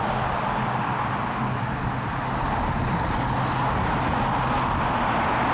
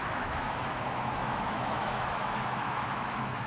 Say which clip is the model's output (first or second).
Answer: second